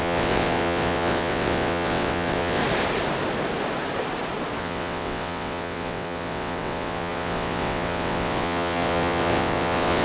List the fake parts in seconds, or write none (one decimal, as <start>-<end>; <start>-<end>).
0.0-2.6; 4.6-10.0